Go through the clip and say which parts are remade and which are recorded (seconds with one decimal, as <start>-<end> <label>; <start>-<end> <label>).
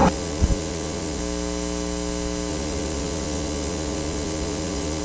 0.0-1.2 remade; 1.2-2.5 recorded; 2.5-5.0 remade